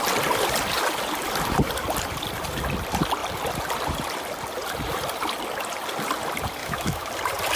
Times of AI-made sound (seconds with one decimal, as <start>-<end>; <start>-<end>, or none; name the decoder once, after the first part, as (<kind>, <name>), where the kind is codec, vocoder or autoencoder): 6.6-7.1 (autoencoder, DAC-VAE)